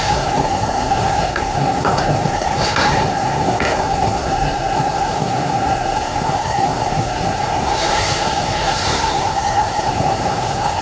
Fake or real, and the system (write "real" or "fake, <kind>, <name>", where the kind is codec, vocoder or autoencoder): fake, codec, SNAC